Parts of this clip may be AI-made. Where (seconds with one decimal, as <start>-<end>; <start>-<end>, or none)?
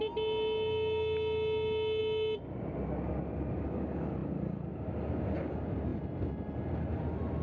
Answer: none